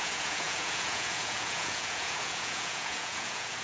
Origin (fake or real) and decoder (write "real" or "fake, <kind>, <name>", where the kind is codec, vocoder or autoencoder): fake, vocoder, Vocos